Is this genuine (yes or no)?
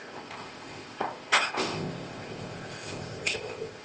no